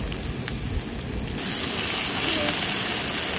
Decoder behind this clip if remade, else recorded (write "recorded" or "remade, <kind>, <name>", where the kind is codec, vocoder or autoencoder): recorded